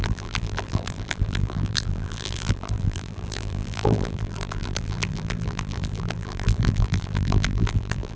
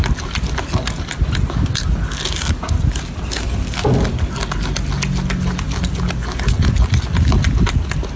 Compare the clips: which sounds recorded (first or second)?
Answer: second